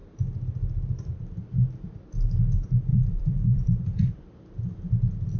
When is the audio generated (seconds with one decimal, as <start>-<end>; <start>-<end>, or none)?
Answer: 2.9-4.2